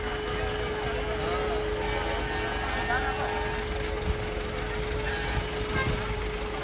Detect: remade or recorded recorded